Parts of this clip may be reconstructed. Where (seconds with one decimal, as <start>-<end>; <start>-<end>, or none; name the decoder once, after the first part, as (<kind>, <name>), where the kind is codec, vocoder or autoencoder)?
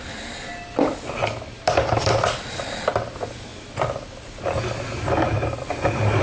none